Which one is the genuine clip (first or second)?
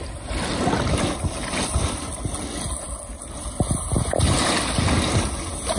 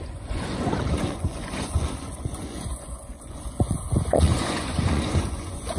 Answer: first